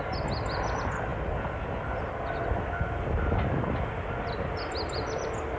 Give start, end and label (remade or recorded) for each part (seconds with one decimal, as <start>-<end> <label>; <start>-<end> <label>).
0.0-5.6 recorded